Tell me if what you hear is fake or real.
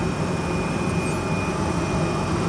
real